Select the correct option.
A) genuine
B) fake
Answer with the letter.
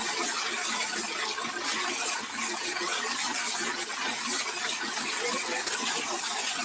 A